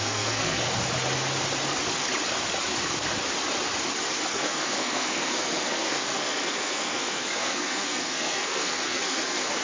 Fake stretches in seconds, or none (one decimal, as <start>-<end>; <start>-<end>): 0.0-0.7; 4.3-9.6